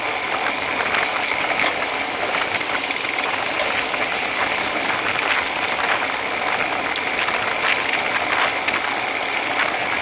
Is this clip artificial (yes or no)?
no